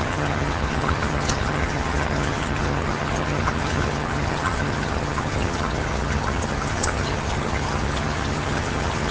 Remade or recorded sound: remade